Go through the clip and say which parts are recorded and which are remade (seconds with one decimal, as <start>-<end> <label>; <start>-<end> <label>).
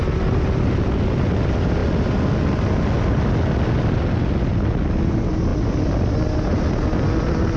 0.0-7.6 recorded